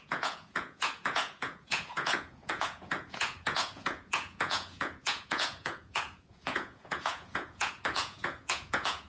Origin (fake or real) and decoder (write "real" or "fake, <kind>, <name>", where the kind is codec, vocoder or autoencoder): fake, vocoder, Vocos